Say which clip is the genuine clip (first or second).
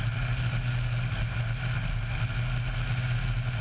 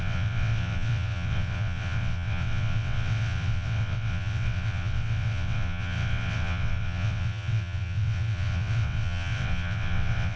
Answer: first